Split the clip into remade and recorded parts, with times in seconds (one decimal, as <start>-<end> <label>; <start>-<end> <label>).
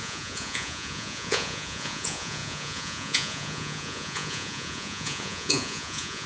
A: 0.0-6.3 remade